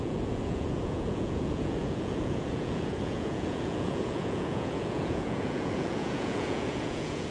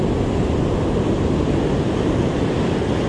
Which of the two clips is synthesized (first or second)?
first